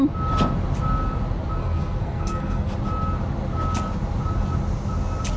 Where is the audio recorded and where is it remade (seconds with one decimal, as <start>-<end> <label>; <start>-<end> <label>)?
0.0-1.6 recorded; 1.6-2.7 remade; 2.7-5.4 recorded